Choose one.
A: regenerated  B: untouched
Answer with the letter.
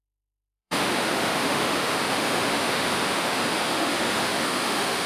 A